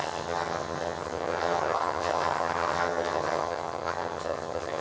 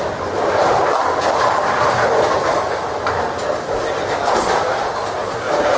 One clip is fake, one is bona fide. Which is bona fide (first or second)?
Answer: second